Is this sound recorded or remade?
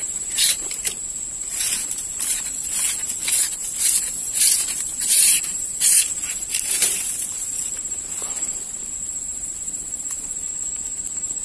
remade